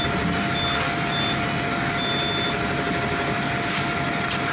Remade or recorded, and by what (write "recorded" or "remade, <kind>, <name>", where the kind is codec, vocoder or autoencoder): recorded